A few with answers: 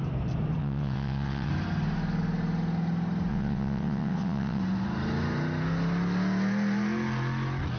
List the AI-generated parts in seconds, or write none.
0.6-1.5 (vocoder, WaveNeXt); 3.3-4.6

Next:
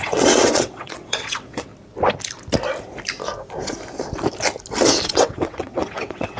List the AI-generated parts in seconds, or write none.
0.0-1.7 (vocoder, WaveNeXt); 5.0-6.4

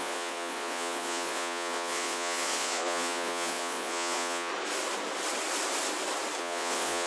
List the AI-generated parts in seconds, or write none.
0.0-4.5 (vocoder, Vocos); 6.4-7.1

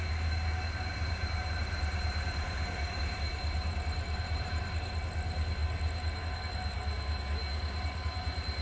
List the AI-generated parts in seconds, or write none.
1.2-4.6 (vocoder, BigVGAN v2)

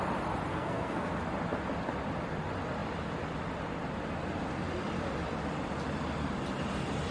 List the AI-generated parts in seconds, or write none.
0.5-1.1 (codec, SNAC)

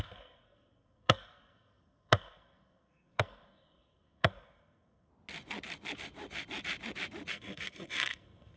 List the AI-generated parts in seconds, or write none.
0.0-5.1 (codec, SNAC); 7.3-8.6

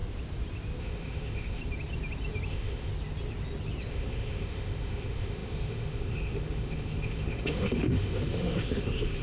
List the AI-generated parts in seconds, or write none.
0.8-1.6 (autoencoder, DAC-VAE); 2.5-2.9; 3.9-9.2